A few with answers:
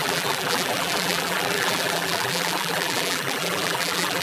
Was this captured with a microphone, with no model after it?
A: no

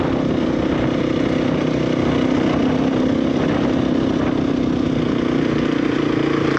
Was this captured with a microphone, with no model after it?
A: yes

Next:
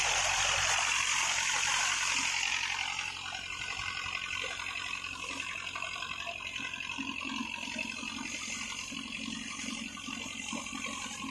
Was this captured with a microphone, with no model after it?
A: yes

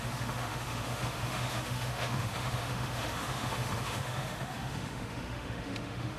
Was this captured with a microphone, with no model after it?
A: no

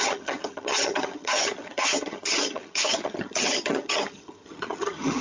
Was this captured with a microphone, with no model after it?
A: no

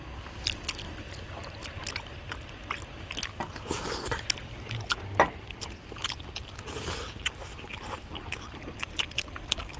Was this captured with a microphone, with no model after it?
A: yes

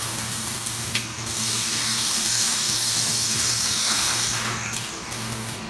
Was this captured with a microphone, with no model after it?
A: no